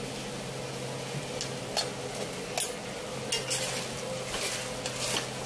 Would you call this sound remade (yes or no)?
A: no